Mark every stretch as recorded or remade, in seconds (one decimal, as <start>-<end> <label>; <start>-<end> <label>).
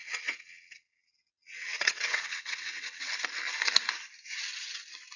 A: 0.0-3.1 remade; 3.1-5.2 recorded